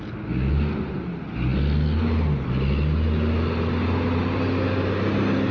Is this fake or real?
real